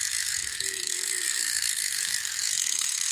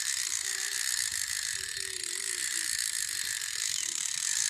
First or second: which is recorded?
second